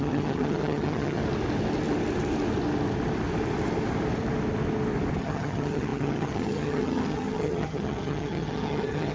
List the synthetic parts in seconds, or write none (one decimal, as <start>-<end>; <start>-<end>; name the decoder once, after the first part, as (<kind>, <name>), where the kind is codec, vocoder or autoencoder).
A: 0.0-1.2 (vocoder, HiFi-GAN); 5.2-9.1

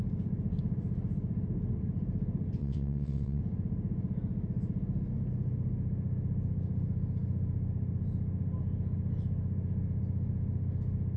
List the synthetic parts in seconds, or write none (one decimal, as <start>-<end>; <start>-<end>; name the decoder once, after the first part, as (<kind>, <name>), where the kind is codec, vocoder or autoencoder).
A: 2.6-3.4 (vocoder, WaveNeXt)

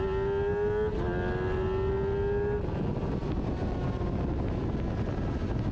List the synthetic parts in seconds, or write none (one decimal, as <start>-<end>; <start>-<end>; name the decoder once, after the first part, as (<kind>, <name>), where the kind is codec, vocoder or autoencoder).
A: none